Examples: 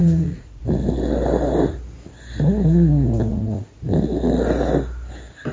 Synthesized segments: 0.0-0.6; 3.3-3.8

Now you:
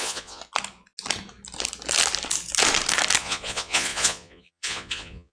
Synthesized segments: 0.0-0.4; 3.2-5.3

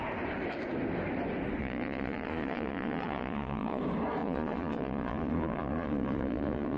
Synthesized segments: 1.6-3.8; 4.2-6.8